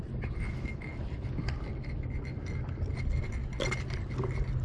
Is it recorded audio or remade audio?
recorded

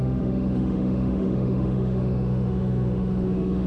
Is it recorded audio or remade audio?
remade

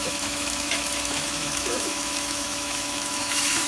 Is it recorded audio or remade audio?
remade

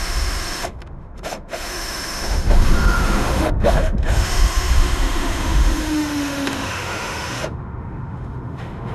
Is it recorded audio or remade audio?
remade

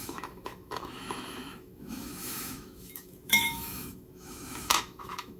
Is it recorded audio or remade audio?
remade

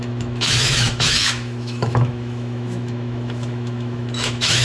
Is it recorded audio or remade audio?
remade